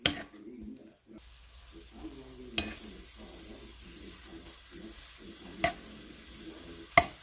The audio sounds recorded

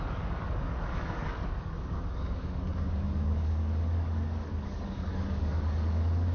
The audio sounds remade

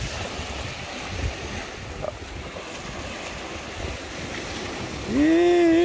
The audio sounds recorded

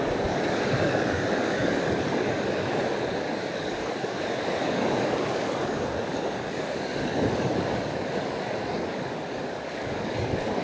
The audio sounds remade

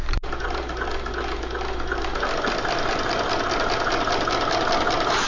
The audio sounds recorded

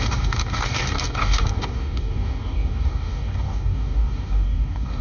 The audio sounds remade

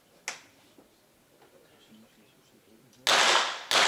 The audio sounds recorded